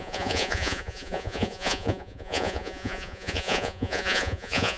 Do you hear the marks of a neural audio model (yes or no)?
yes